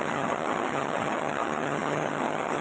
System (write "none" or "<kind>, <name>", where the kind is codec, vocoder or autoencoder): vocoder, HiFi-GAN